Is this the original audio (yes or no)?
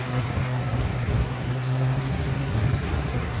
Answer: no